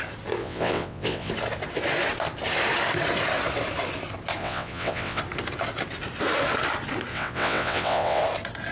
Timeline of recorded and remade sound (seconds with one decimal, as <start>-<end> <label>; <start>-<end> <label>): 0.0-0.4 recorded; 0.4-1.3 remade; 1.3-4.4 recorded; 4.4-5.2 remade; 5.2-7.1 recorded; 7.1-8.2 remade; 8.2-8.7 recorded